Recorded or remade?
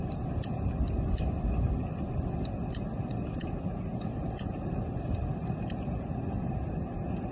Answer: recorded